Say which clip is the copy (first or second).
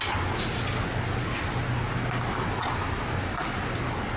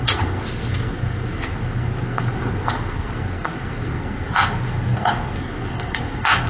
second